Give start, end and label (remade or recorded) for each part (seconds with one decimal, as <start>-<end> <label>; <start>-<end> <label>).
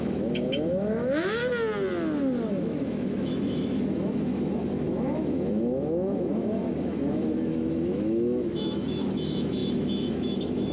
0.0-1.4 remade; 1.4-2.5 recorded; 2.5-10.7 remade